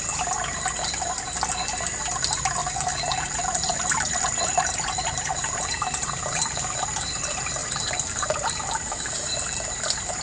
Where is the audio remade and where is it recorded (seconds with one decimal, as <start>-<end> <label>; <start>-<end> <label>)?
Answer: 0.0-2.6 recorded; 2.6-6.7 remade; 6.7-7.6 recorded; 7.6-9.7 remade; 9.7-10.2 recorded